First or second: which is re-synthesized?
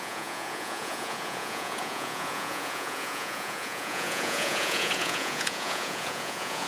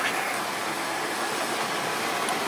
first